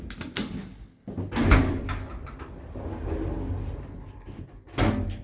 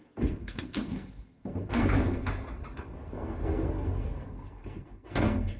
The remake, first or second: second